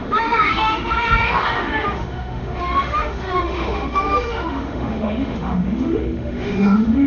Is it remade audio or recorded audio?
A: remade